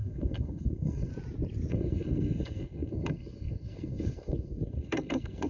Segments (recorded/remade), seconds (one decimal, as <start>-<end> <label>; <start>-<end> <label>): 0.0-1.1 remade; 1.1-1.7 recorded; 1.7-5.5 remade